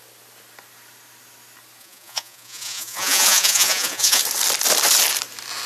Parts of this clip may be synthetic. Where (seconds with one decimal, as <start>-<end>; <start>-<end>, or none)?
1.8-4.2